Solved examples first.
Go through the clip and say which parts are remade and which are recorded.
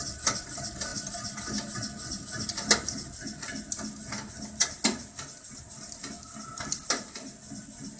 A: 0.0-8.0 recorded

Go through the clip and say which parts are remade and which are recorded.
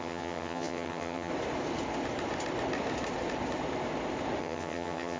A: 0.0-1.3 remade; 1.3-4.4 recorded; 4.4-5.2 remade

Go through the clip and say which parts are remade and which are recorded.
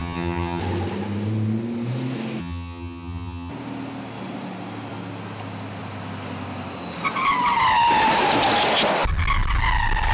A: 0.0-0.6 remade; 0.6-2.4 recorded; 2.4-3.5 remade; 3.5-10.1 recorded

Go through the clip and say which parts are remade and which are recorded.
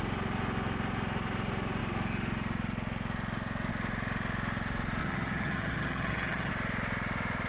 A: 0.0-5.0 recorded; 5.0-6.5 remade; 6.5-7.5 recorded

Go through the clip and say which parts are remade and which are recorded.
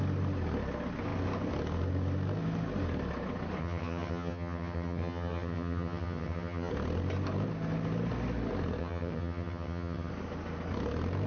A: 0.0-3.6 recorded; 3.6-6.7 remade; 6.7-8.8 recorded; 8.8-10.1 remade; 10.1-11.3 recorded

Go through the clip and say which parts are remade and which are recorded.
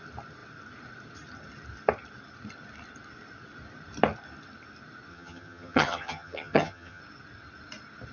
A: 0.0-5.1 recorded; 5.1-7.0 remade; 7.0-8.1 recorded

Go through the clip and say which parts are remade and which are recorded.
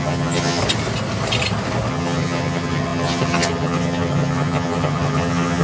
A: 0.0-0.6 remade; 0.6-1.9 recorded; 1.9-5.6 remade